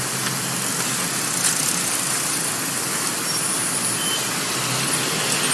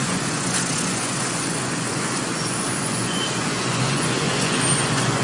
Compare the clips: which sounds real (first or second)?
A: first